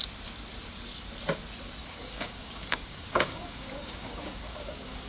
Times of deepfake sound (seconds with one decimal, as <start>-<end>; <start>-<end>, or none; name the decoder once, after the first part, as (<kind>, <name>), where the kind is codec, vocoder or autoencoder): 1.8-5.1 (codec, DAC)